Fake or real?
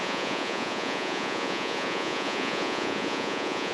fake